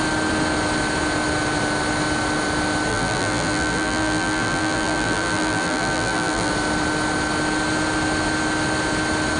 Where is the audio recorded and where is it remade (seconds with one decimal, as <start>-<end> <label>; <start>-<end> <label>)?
0.0-2.9 recorded; 2.9-6.5 remade; 6.5-9.4 recorded